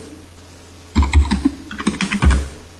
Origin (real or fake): real